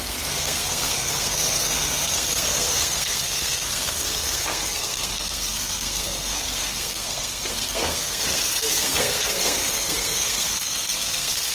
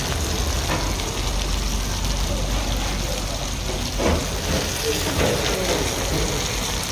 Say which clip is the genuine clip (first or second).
second